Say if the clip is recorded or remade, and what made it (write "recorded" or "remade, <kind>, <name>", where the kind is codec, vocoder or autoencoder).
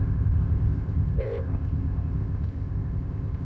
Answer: remade, codec, ZipCodec